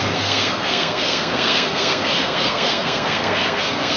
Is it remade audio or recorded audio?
remade